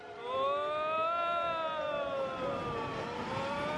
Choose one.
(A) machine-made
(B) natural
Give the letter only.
B